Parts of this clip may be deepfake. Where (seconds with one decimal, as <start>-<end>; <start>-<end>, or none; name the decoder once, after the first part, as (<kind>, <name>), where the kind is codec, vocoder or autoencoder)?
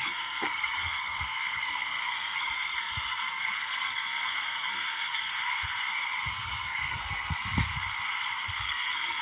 0.0-5.3 (codec, SNAC); 6.3-7.7; 8.6-9.2